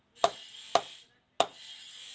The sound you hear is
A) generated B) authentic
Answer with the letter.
B